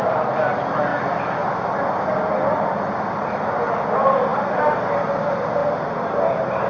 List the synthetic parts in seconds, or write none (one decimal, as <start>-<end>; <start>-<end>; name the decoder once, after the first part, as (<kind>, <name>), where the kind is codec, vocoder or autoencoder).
none